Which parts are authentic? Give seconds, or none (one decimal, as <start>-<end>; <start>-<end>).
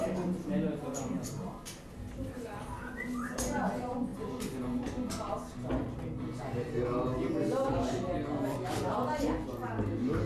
0.0-10.3